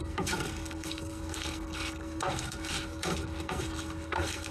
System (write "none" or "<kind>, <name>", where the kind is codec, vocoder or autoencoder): codec, SNAC